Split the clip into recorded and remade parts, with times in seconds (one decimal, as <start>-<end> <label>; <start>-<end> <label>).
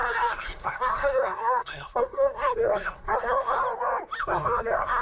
0.0-3.6 remade; 3.6-4.2 recorded; 4.2-5.0 remade